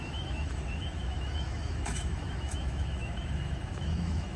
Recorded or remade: remade